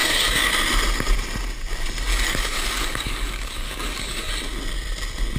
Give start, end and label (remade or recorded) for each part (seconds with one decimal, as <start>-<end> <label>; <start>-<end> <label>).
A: 0.0-0.5 remade; 0.5-2.1 recorded; 2.1-4.3 remade; 4.3-5.4 recorded

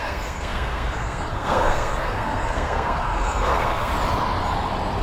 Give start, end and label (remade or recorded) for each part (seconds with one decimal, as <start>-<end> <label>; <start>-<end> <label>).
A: 0.0-3.9 remade; 3.9-5.0 recorded

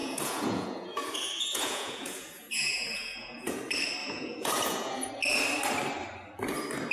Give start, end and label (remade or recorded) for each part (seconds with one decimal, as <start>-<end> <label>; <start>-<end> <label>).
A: 0.0-3.6 remade; 3.6-4.0 recorded; 4.0-5.1 remade; 5.1-6.9 recorded

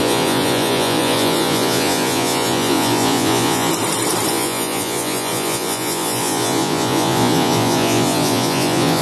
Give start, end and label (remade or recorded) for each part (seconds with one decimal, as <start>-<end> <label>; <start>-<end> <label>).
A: 0.0-3.7 remade; 3.7-4.3 recorded; 4.3-9.0 remade

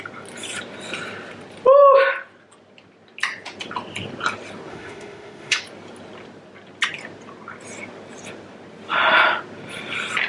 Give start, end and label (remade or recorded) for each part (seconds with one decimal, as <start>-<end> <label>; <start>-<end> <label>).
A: 0.0-4.7 recorded; 4.7-5.6 remade; 5.6-10.3 recorded

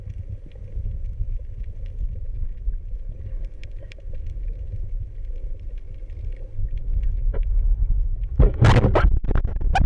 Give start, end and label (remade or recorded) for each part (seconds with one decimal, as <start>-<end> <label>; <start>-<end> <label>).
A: 0.0-9.9 recorded

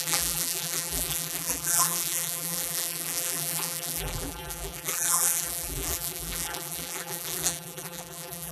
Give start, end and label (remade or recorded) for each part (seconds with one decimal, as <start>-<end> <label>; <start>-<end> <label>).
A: 0.0-8.5 remade

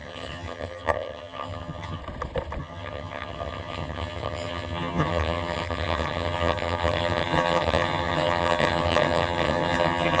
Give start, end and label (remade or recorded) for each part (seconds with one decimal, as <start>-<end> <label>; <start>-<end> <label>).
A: 0.0-2.0 remade; 2.0-2.6 recorded; 2.6-10.2 remade